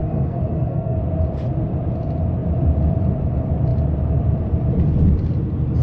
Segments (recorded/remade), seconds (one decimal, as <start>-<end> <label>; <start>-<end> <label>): 0.0-1.0 remade; 1.0-5.8 recorded